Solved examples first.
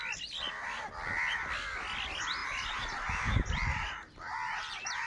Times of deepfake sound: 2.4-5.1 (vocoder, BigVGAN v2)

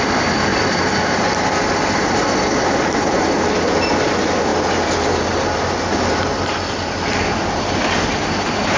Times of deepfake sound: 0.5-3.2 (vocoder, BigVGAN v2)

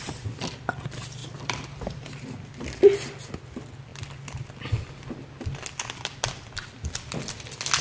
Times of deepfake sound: 1.2-3.3 (vocoder, BigVGAN v2)

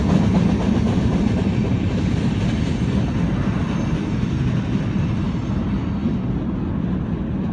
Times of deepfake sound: 1.6-2.3 (vocoder, BigVGAN v2)